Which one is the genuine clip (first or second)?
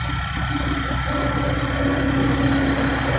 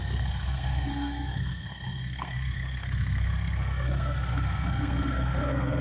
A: first